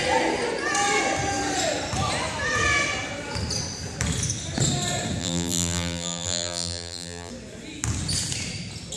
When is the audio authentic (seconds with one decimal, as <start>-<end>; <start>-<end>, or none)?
0.0-5.2; 7.3-9.0